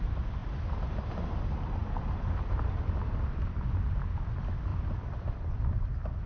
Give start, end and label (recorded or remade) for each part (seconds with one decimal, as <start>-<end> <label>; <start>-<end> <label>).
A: 0.0-4.7 recorded; 4.7-6.3 remade